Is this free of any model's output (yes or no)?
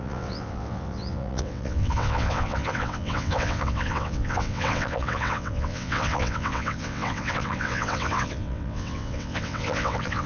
no